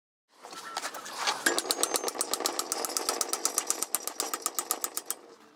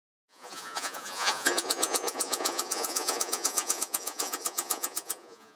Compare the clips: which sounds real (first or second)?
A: first